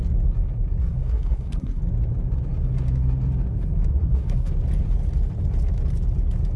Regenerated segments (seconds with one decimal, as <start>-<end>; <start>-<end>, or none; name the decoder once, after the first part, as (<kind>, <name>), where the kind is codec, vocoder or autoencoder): 0.9-1.8 (codec, SNAC); 3.9-4.5